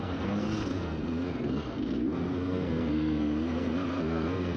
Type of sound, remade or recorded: remade